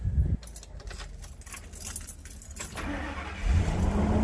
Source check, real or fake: real